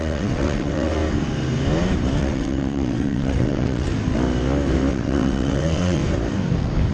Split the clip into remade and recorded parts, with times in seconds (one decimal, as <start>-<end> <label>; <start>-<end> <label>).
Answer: 0.0-1.0 remade; 1.0-2.2 recorded; 2.2-3.9 remade; 3.9-4.9 recorded; 4.9-6.0 remade; 6.0-6.9 recorded